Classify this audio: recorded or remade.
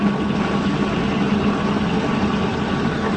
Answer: recorded